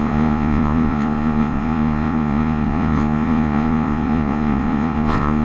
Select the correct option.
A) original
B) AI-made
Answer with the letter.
B